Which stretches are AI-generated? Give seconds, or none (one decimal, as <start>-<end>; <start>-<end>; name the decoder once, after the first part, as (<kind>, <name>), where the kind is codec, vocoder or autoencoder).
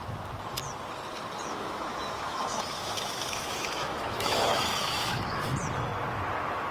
1.5-5.4 (autoencoder, DAC-VAE)